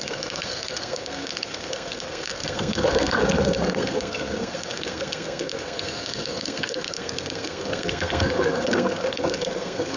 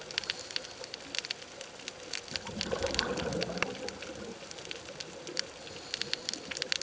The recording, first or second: second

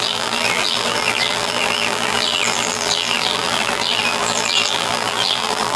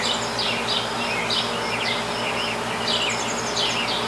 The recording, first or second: second